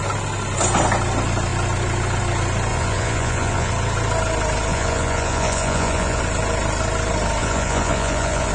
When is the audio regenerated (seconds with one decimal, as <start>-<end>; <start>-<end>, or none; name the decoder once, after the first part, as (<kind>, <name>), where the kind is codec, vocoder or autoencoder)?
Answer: 2.7-3.7 (vocoder, Vocos); 4.7-6.2; 7.4-8.5